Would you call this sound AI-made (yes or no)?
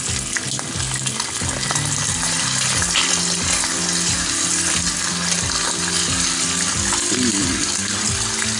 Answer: no